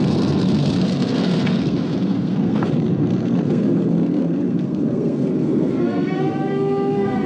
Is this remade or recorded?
remade